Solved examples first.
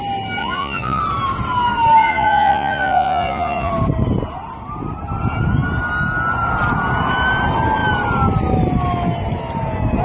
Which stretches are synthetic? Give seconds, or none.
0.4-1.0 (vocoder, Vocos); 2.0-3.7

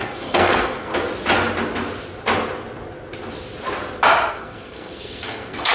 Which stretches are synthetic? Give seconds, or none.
0.0-0.9 (codec, SNAC); 4.3-5.7

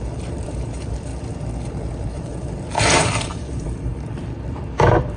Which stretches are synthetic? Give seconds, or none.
0.0-1.1 (vocoder, BigVGAN v2); 1.9-5.2

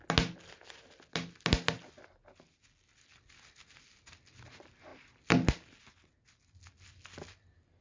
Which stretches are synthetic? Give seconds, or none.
none